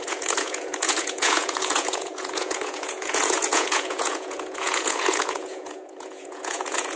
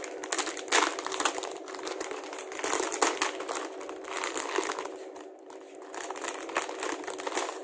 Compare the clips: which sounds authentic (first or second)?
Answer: second